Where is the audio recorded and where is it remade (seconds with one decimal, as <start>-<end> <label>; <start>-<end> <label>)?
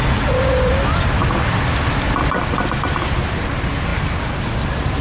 0.0-5.0 recorded